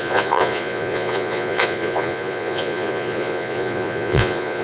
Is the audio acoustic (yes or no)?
no